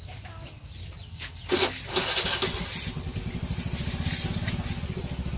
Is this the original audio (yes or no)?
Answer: yes